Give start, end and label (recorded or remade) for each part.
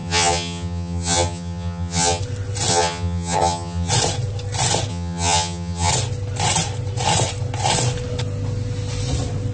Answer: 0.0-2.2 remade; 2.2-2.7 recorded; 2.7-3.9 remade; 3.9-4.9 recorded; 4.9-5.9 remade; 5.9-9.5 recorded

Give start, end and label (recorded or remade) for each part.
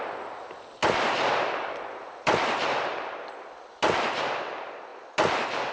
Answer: 0.0-0.8 recorded; 0.8-4.2 remade; 4.2-4.9 recorded; 4.9-5.7 remade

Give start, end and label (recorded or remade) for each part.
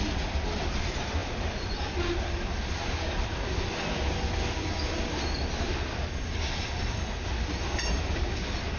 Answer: 0.0-1.2 recorded; 1.2-5.0 remade; 5.0-8.8 recorded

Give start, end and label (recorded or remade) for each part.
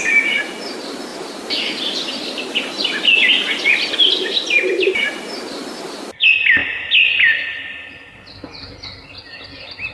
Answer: 0.0-9.9 recorded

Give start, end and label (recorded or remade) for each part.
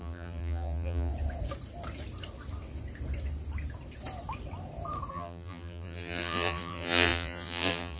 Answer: 0.0-1.1 remade; 1.1-5.1 recorded; 5.1-8.0 remade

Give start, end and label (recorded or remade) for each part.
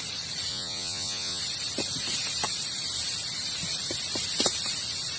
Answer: 0.0-0.5 recorded; 0.5-1.4 remade; 1.4-5.2 recorded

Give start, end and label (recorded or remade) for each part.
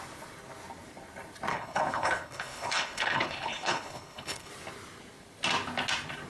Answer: 0.0-1.5 recorded; 1.5-4.5 remade; 4.5-6.3 recorded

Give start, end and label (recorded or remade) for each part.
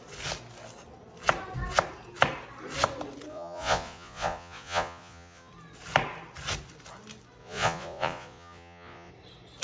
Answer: 0.0-3.3 recorded; 3.3-5.5 remade; 5.5-7.4 recorded; 7.4-9.1 remade; 9.1-9.6 recorded